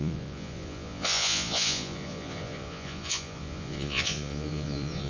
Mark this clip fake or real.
fake